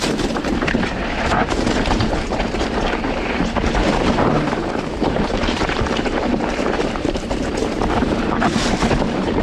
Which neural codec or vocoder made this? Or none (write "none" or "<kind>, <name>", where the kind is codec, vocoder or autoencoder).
vocoder, BigVGAN v2